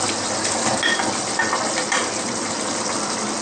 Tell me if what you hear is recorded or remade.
recorded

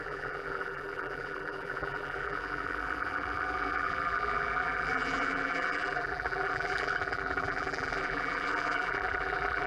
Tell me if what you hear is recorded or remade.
remade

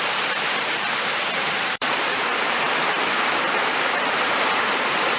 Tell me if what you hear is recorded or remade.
remade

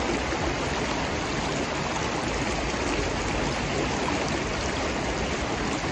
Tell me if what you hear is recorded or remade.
recorded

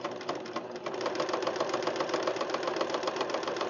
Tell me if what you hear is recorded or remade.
remade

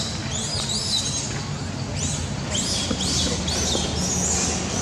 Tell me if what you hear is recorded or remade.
recorded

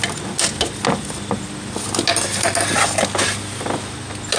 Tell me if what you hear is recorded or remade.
recorded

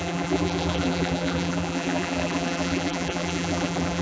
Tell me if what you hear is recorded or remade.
remade